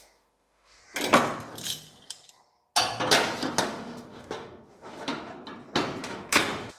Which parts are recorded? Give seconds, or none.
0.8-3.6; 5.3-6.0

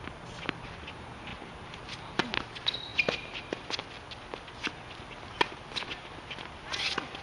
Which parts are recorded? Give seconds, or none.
0.0-7.2

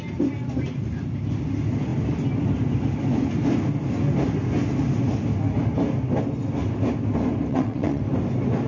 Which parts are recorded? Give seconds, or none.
0.0-7.5; 8.0-8.7